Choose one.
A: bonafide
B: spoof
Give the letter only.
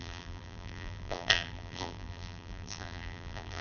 B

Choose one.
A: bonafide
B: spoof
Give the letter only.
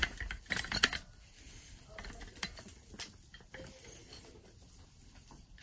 A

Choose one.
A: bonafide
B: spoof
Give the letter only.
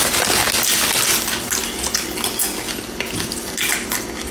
A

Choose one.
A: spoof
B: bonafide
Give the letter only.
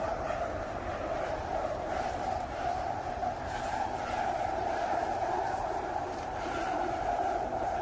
A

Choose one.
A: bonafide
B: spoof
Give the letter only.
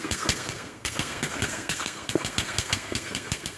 B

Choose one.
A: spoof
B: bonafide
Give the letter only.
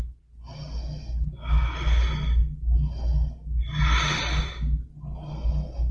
B